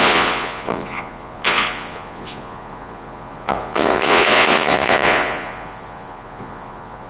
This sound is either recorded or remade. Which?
remade